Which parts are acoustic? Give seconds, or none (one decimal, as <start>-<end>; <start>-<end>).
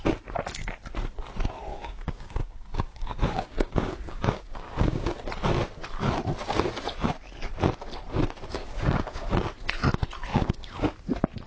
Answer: 0.0-1.7; 5.1-8.6; 9.3-10.3; 10.9-11.5